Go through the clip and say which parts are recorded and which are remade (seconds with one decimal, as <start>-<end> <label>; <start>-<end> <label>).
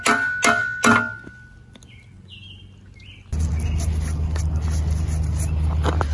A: 0.0-6.1 recorded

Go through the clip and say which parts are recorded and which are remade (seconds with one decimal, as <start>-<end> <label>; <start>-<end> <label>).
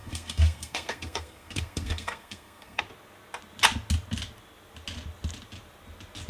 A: 0.0-2.8 remade; 2.8-6.3 recorded